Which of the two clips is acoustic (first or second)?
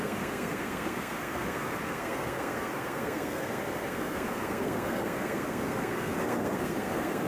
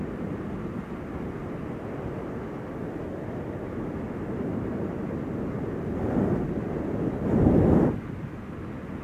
second